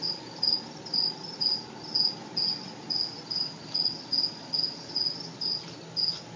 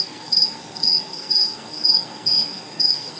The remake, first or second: second